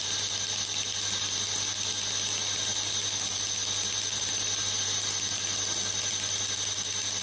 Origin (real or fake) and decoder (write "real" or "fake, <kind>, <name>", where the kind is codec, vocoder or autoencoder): real